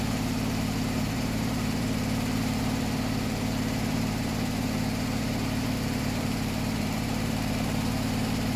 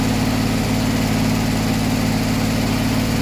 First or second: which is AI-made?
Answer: first